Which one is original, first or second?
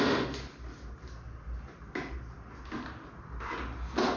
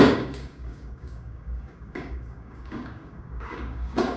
first